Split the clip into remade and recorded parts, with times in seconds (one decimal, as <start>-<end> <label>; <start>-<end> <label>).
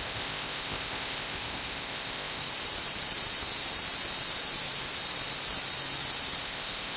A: 0.0-2.4 remade; 2.4-6.4 recorded; 6.4-7.0 remade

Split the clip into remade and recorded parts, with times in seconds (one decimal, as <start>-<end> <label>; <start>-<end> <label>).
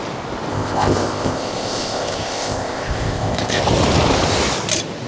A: 0.0-0.5 recorded; 0.5-3.6 remade; 3.6-5.1 recorded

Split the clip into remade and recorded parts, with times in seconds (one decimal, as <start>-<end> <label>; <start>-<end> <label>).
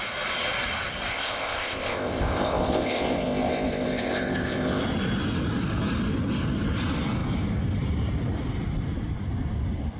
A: 0.0-1.1 recorded; 1.1-4.8 remade; 4.8-10.0 recorded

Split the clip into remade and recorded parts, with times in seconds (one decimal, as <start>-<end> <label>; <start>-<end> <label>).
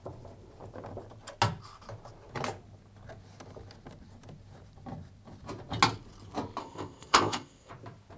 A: 0.0-6.6 recorded; 6.6-7.7 remade; 7.7-8.2 recorded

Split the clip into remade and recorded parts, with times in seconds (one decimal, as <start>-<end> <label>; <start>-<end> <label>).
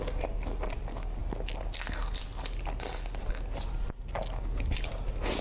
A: 0.0-5.4 recorded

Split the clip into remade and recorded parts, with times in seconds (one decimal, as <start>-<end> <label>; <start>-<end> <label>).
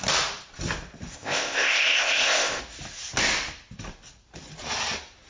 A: 0.0-1.1 recorded; 1.1-2.6 remade; 2.6-5.3 recorded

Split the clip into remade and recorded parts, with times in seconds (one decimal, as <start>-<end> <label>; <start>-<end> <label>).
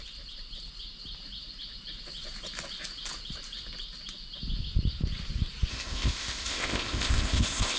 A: 0.0-5.7 recorded; 5.7-7.8 remade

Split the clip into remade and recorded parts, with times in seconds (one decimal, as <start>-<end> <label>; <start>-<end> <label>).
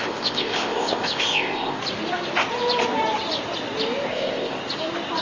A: 0.0-1.8 remade; 1.8-4.1 recorded; 4.1-4.6 remade; 4.6-5.2 recorded